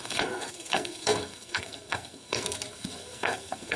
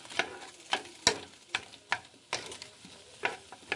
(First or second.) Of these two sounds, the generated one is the first